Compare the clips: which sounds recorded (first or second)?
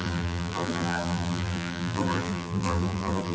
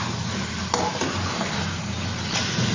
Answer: second